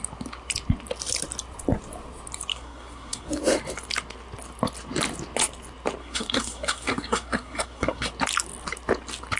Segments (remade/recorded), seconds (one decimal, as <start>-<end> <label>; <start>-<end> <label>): 0.0-2.5 recorded; 2.5-3.4 remade; 3.4-6.0 recorded; 6.0-8.1 remade; 8.1-9.4 recorded